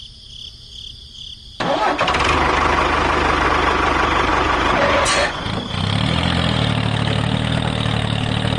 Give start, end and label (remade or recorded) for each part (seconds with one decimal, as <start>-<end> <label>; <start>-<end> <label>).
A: 0.0-4.3 recorded; 4.3-5.4 remade; 5.4-8.6 recorded

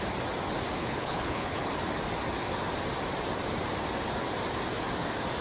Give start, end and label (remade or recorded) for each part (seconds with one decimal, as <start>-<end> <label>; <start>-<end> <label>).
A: 0.0-0.8 recorded; 0.8-1.7 remade; 1.7-5.4 recorded

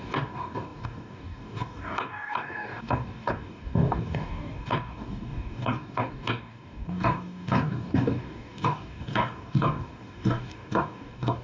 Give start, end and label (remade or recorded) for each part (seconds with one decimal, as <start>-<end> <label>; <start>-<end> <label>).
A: 0.0-11.4 remade

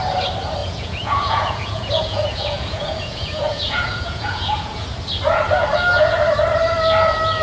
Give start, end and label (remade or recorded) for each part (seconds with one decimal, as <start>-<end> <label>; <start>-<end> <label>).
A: 0.0-0.6 recorded; 0.6-5.0 remade; 5.0-7.4 recorded

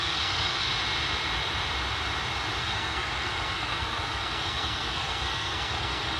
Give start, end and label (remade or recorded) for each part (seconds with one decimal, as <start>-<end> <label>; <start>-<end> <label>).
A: 0.0-0.7 remade; 0.7-2.6 recorded; 2.6-6.2 remade